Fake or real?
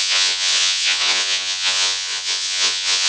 fake